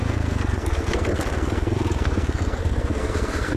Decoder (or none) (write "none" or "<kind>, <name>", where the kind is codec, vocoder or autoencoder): codec, SNAC